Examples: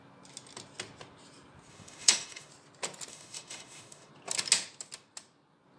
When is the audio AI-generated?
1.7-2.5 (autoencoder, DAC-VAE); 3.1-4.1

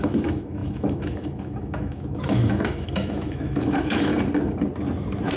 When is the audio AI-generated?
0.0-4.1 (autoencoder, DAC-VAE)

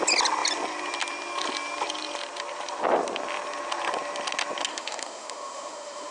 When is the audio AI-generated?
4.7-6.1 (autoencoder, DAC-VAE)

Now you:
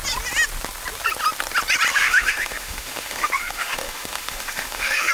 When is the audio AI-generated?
1.9-5.1 (autoencoder, DAC-VAE)

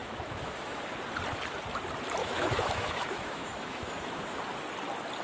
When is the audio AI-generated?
0.0-0.8 (autoencoder, DAC-VAE); 2.2-4.4